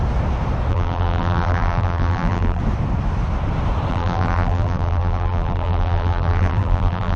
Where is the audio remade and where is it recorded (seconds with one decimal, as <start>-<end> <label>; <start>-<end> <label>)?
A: 0.0-0.7 recorded; 0.7-2.6 remade; 2.6-3.9 recorded; 3.9-7.2 remade